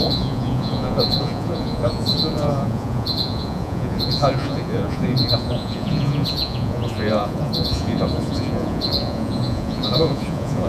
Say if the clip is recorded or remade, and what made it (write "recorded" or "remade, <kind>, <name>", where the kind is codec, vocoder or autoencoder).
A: remade, vocoder, Vocos